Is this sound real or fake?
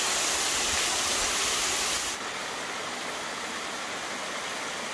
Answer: real